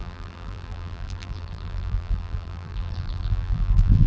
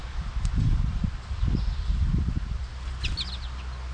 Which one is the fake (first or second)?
first